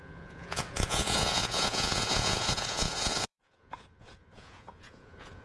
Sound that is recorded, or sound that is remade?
remade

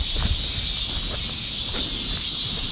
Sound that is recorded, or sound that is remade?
recorded